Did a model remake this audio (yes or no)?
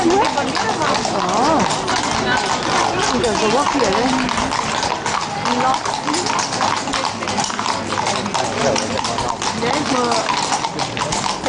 no